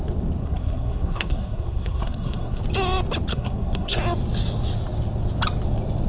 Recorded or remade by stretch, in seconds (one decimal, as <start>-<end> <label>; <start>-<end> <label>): 0.0-0.4 recorded; 0.4-2.6 remade; 2.6-3.3 recorded; 3.3-4.0 remade; 4.0-6.1 recorded